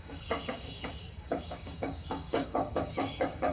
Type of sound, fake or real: fake